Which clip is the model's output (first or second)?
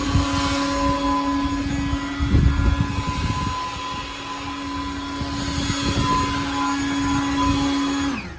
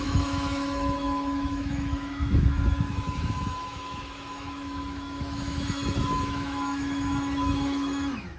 second